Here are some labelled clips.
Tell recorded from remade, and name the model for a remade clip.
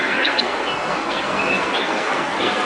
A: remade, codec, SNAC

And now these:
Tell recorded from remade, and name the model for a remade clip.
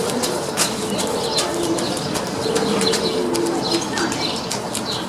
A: recorded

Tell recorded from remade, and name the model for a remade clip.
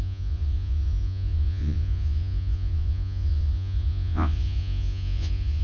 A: remade, vocoder, Vocos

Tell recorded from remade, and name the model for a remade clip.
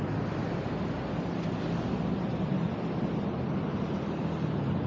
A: recorded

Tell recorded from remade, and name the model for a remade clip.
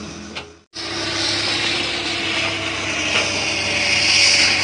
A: recorded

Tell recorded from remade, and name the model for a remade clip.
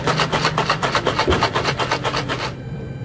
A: recorded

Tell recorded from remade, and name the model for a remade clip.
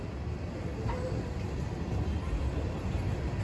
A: recorded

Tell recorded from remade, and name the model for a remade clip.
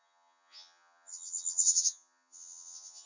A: remade, vocoder, HiFi-GAN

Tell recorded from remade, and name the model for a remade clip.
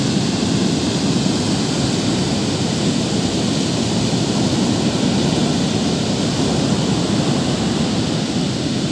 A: recorded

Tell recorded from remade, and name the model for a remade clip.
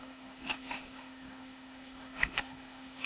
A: remade, autoencoder, DAC-VAE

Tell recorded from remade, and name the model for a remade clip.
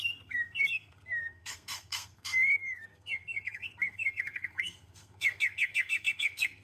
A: remade, codec, SNAC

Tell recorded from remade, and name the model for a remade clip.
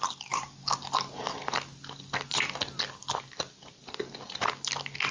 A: recorded